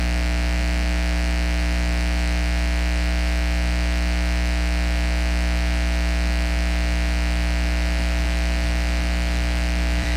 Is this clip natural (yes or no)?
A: no